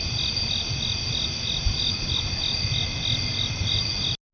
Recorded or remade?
recorded